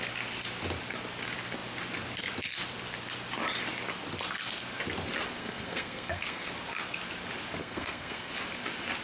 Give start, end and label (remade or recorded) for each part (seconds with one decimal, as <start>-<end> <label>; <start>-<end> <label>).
0.0-5.4 recorded; 5.4-6.5 remade; 6.5-7.6 recorded; 7.6-8.3 remade; 8.3-9.0 recorded